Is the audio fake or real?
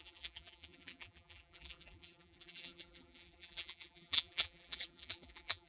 fake